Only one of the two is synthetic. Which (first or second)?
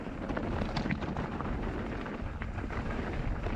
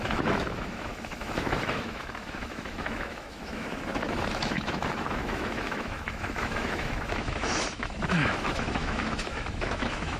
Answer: second